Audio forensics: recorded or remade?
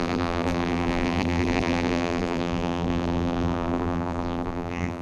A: remade